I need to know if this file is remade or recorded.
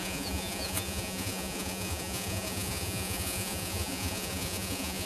remade